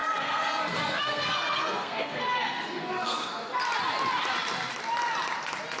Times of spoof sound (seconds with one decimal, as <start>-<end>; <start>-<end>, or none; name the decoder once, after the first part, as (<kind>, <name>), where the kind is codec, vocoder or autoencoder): 0.0-3.5 (codec, SNAC)